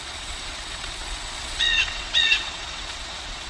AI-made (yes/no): yes